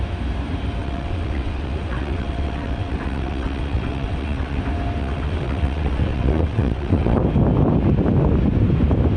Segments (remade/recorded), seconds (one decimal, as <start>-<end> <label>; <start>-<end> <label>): 0.0-0.8 recorded; 0.8-4.6 remade; 4.6-5.0 recorded; 5.0-7.2 remade; 7.2-9.2 recorded